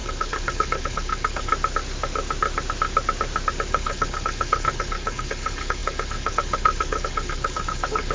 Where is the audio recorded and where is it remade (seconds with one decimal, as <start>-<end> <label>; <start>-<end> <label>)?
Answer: 0.0-1.5 remade; 1.5-3.7 recorded; 3.7-8.1 remade